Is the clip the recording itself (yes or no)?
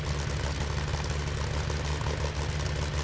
yes